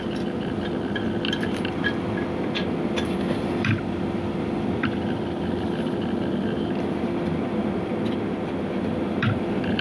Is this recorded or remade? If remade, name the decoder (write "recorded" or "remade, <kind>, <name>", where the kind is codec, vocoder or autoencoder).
recorded